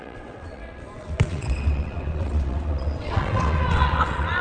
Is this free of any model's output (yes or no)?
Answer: no